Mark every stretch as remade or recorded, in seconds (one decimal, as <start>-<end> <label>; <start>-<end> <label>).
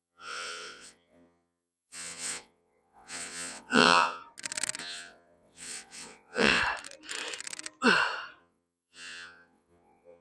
0.0-4.2 remade; 4.2-4.8 recorded; 4.8-6.6 remade; 6.6-8.4 recorded; 8.4-10.2 remade